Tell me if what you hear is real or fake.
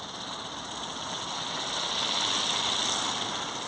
real